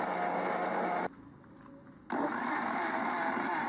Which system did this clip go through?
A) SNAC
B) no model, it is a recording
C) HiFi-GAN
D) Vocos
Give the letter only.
B